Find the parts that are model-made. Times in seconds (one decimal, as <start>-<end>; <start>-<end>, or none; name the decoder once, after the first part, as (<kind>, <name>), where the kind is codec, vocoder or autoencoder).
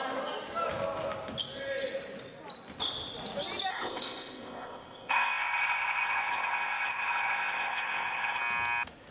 3.7-8.4 (codec, ZipCodec)